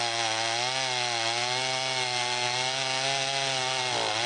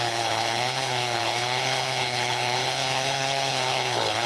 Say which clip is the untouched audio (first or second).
first